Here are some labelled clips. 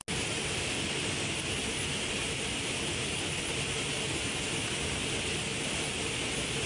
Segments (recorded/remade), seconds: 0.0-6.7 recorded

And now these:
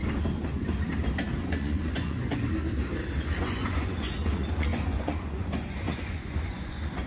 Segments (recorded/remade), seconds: 0.0-1.4 recorded; 1.4-2.3 remade; 2.3-3.4 recorded; 3.4-7.1 remade